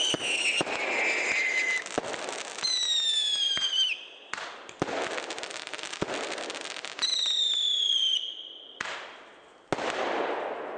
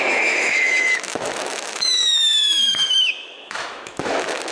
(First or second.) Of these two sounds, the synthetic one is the second